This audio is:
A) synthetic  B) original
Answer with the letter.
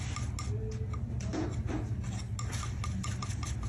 B